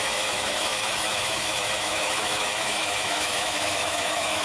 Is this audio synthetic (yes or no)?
yes